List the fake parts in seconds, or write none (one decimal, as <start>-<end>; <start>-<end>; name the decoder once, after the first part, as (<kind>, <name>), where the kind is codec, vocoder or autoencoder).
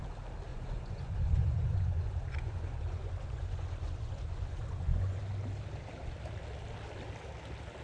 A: 0.5-5.2 (vocoder, Vocos)